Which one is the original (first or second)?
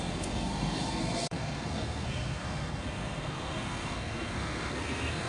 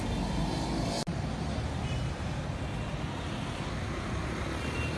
second